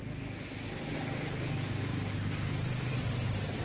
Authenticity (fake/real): real